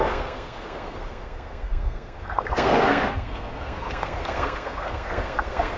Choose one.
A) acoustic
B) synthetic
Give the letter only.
B